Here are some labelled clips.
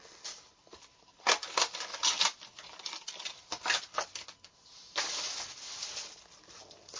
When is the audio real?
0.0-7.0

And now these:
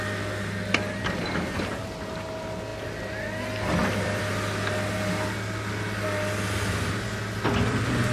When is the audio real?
0.0-3.8; 4.3-8.1

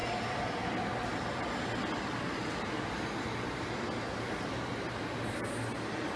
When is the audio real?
0.0-6.2

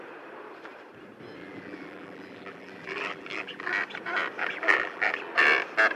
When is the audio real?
0.0-1.4; 3.7-4.4; 5.2-6.0